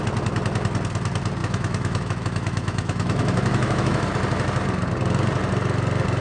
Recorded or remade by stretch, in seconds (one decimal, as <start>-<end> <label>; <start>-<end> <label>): 0.0-1.4 recorded; 1.4-4.0 remade; 4.0-6.2 recorded